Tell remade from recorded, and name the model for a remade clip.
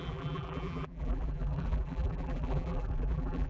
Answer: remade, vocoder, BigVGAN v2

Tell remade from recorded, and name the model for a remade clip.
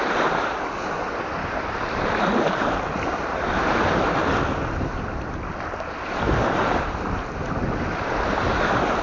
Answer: recorded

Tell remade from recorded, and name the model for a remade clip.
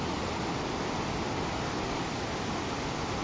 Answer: recorded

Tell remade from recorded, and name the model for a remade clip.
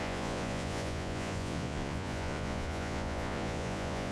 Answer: remade, vocoder, Vocos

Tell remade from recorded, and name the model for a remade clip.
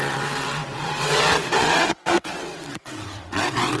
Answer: remade, vocoder, WaveNeXt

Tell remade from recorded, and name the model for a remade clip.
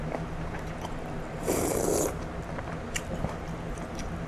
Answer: remade, vocoder, BigVGAN v2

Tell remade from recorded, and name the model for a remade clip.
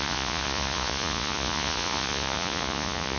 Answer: remade, vocoder, Vocos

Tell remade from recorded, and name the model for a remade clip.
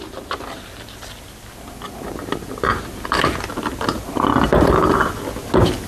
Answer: recorded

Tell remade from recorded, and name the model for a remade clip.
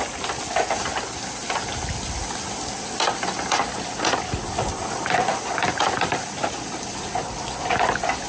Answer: recorded